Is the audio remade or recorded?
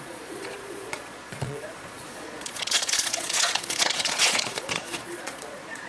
remade